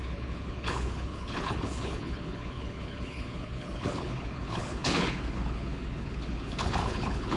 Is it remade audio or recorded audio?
remade